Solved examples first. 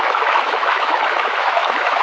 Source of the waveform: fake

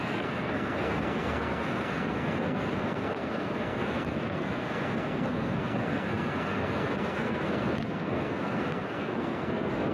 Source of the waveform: fake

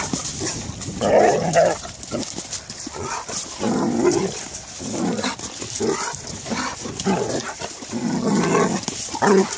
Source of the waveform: real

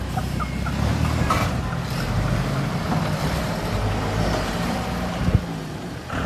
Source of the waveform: fake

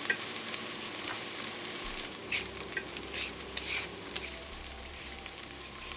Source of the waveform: fake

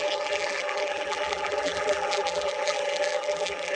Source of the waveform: fake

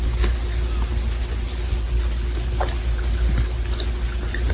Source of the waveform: real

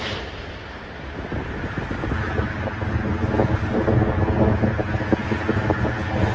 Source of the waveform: real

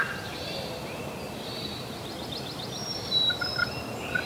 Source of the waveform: fake